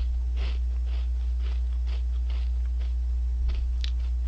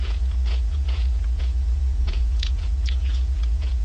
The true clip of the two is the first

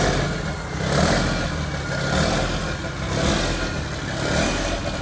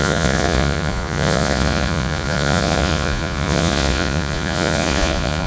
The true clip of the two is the first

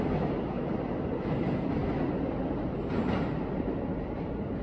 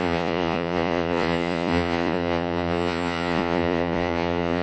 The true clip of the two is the first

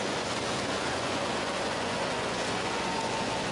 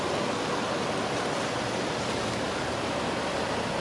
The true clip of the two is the second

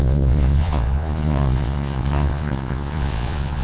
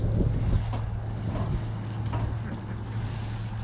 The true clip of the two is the second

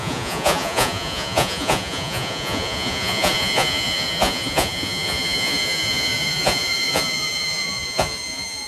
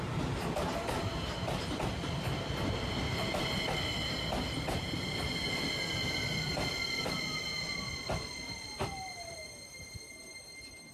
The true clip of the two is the second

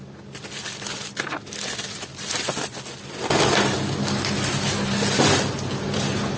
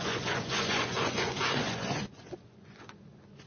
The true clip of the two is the first